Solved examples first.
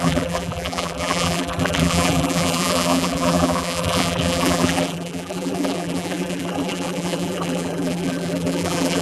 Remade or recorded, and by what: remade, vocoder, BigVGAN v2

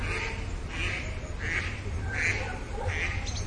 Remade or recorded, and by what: recorded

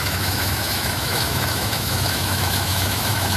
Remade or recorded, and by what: remade, autoencoder, DAC-VAE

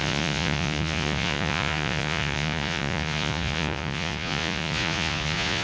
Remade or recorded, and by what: remade, vocoder, Vocos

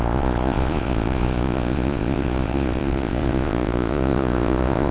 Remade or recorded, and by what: remade, vocoder, Vocos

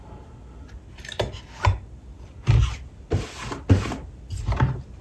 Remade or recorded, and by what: recorded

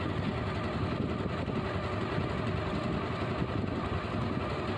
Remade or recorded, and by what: recorded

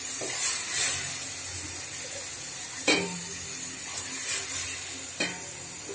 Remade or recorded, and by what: recorded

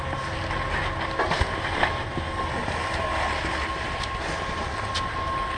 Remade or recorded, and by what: recorded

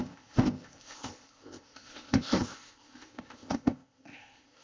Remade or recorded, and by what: remade, codec, ZipCodec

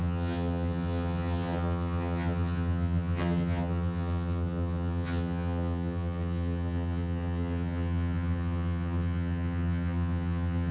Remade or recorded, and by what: remade, vocoder, HiFi-GAN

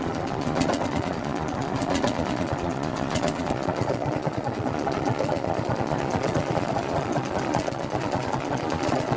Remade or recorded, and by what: remade, vocoder, Vocos